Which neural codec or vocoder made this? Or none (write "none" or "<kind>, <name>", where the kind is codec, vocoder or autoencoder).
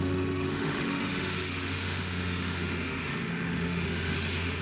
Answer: autoencoder, DAC-VAE